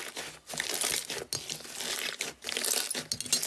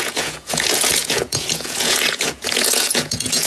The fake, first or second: second